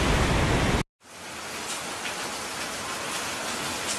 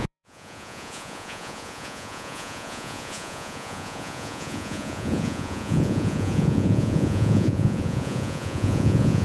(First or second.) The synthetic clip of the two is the second